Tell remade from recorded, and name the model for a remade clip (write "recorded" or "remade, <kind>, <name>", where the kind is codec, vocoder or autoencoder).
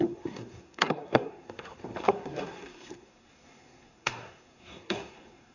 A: remade, codec, SNAC